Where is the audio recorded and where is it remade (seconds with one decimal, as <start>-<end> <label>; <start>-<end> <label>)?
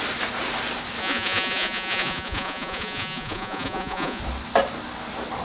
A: 0.0-1.0 recorded; 1.0-4.2 remade; 4.2-5.4 recorded